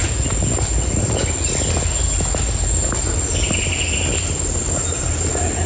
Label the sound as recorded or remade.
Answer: recorded